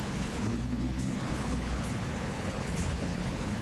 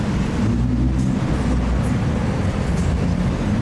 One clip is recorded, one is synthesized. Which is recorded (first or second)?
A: second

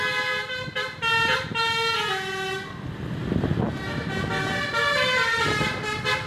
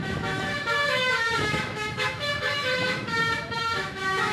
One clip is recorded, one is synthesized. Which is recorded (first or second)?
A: first